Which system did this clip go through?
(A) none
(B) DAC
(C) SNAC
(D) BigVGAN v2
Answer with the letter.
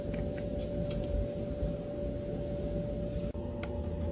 A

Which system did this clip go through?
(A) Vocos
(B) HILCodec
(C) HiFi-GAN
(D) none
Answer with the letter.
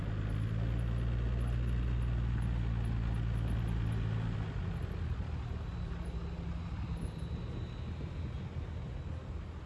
D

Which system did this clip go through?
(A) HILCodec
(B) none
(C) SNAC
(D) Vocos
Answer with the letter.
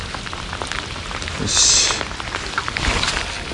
B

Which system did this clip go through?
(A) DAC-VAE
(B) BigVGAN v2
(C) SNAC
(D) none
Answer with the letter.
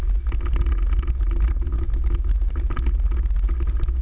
D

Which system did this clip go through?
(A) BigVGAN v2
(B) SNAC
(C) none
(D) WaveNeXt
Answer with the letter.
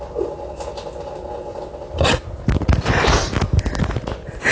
C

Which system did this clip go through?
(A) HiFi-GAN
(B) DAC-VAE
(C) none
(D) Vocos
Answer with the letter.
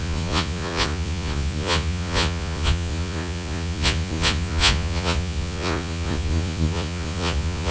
D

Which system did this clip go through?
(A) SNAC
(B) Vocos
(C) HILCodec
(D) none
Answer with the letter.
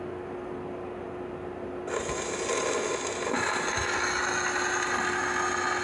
D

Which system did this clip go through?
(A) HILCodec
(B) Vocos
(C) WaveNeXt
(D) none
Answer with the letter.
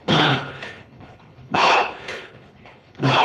A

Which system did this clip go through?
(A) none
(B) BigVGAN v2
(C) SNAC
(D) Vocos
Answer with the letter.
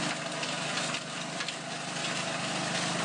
A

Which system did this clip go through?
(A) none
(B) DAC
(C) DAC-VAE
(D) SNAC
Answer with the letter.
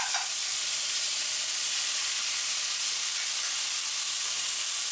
A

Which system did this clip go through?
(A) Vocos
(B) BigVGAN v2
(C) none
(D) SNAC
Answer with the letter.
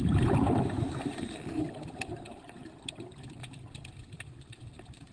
B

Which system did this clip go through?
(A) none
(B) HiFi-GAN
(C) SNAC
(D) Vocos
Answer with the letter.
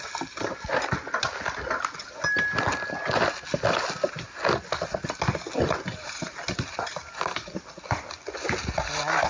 A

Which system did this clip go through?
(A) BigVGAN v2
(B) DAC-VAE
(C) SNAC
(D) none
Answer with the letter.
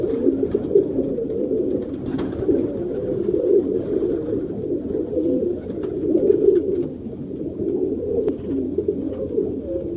D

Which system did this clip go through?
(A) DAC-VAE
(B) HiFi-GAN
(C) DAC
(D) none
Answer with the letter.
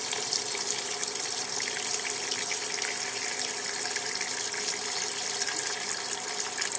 D